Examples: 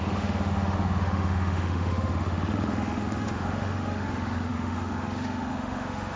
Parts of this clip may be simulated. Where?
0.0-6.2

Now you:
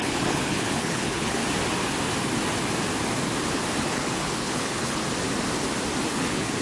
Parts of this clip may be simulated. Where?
0.0-1.4; 3.8-5.0; 6.1-6.6

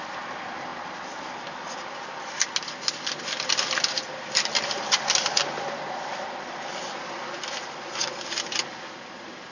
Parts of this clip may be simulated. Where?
none

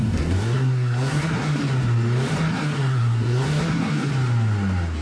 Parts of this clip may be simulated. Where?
0.0-1.6; 2.3-4.1

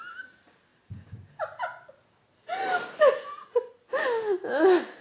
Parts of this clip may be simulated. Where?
none

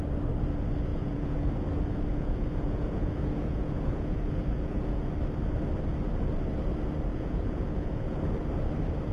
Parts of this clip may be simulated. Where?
0.9-1.5; 2.1-5.1; 7.1-8.2